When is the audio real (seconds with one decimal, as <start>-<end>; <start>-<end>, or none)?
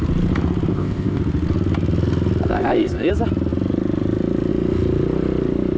0.0-0.7; 1.2-2.5; 3.1-5.8